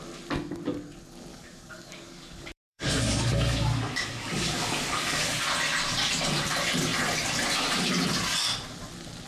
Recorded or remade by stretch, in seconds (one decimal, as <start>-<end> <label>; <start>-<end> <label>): 0.0-1.3 recorded; 1.3-5.4 remade; 5.4-9.3 recorded

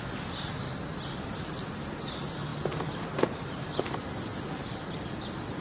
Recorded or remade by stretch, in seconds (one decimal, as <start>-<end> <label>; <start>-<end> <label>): 0.0-5.6 recorded

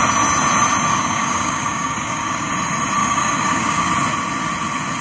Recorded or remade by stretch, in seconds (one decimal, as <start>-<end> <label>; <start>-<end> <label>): 0.0-0.9 recorded; 0.9-2.5 remade; 2.5-3.0 recorded; 3.0-3.9 remade; 3.9-5.0 recorded

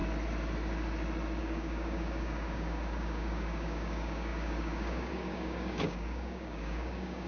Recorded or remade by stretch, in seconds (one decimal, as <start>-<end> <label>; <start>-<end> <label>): 0.0-1.4 recorded; 1.4-7.3 remade

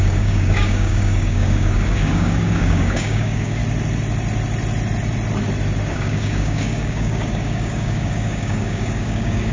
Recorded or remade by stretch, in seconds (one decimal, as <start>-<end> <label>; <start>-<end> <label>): 0.0-3.6 remade; 3.6-5.9 recorded; 5.9-9.5 remade